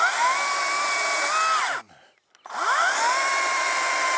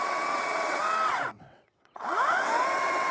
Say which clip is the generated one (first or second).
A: second